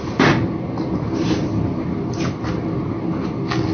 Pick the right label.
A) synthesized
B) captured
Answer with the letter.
B